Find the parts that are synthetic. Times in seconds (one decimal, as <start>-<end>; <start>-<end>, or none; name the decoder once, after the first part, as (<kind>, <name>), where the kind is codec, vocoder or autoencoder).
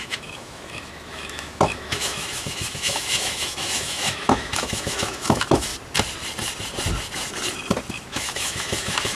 0.0-5.7 (autoencoder, DAC-VAE); 7.9-9.1